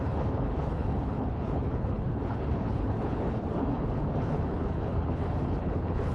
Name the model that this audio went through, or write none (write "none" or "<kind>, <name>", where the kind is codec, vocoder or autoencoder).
codec, HILCodec